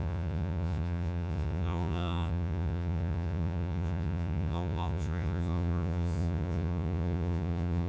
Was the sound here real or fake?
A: fake